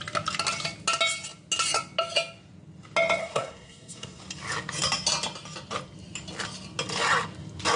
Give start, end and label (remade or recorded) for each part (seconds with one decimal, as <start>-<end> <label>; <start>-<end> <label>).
0.0-3.2 recorded; 3.2-4.2 remade; 4.2-7.8 recorded